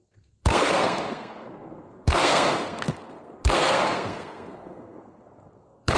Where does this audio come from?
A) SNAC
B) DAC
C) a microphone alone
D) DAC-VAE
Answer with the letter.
A